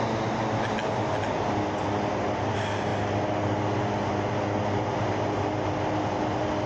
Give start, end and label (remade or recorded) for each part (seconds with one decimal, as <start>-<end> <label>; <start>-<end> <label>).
0.0-6.7 recorded

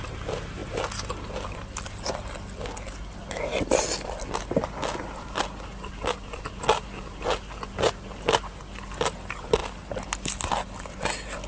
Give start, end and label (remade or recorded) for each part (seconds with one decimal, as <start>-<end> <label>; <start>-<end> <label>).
0.0-11.5 recorded

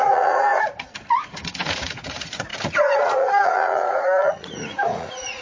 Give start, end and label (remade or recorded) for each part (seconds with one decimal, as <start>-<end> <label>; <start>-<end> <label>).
0.0-5.4 remade

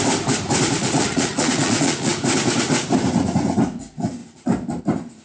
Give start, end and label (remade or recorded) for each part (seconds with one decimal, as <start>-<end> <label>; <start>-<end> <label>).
0.0-0.8 recorded; 0.8-2.1 remade; 2.1-5.2 recorded

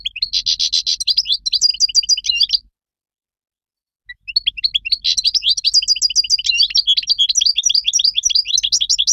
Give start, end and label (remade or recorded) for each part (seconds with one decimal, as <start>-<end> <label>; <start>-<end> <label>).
0.0-9.1 recorded

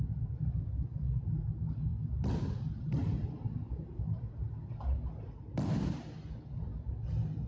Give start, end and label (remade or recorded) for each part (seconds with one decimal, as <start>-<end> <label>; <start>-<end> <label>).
0.0-7.5 recorded

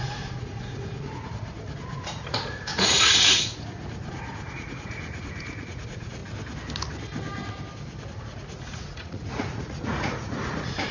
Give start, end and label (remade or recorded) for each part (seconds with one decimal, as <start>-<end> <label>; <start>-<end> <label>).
0.0-6.2 remade; 6.2-8.2 recorded; 8.2-10.9 remade

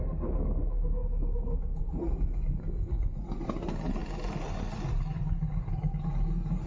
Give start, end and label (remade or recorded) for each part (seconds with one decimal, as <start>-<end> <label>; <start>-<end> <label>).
0.0-6.7 recorded